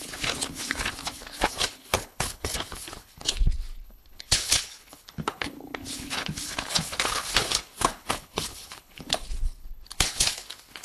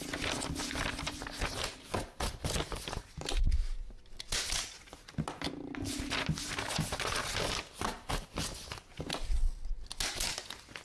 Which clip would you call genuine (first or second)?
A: second